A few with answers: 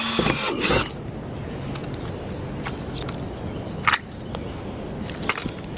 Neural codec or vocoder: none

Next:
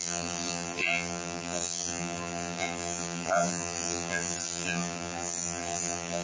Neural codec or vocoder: vocoder, BigVGAN v2